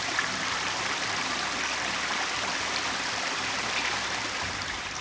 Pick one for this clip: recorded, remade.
recorded